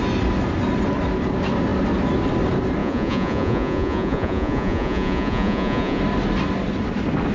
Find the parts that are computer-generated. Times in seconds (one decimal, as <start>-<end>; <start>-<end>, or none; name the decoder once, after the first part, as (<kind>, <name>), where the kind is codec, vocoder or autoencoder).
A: 2.8-6.0 (vocoder, Vocos)